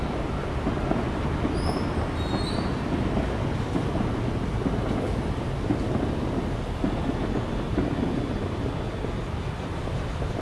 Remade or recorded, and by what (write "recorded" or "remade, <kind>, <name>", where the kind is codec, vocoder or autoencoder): recorded